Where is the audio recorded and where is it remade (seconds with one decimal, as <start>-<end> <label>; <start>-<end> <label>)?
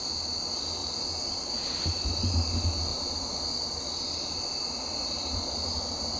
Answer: 0.0-0.8 recorded; 0.8-1.5 remade; 1.5-2.9 recorded; 2.9-3.5 remade; 3.5-6.2 recorded